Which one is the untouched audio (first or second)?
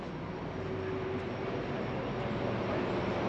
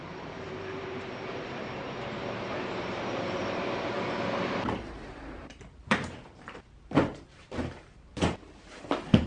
first